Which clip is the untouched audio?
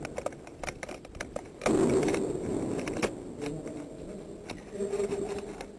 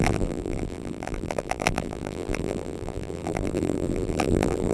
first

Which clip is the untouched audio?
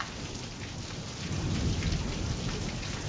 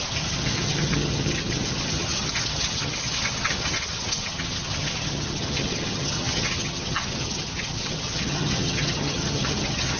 first